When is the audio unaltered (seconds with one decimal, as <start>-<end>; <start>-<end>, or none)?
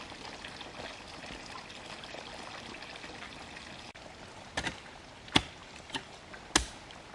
0.0-5.6; 6.2-7.1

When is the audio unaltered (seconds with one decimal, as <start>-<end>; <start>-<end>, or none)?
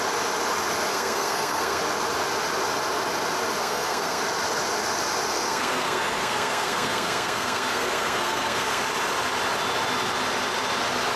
0.0-0.9; 1.8-3.6; 4.2-5.3; 8.8-11.2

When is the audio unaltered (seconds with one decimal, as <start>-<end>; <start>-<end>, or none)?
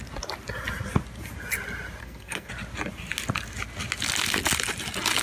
0.0-2.0; 2.5-5.2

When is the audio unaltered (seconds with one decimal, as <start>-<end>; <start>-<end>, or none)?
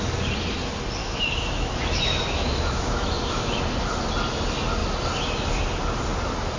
0.0-1.0; 3.6-6.6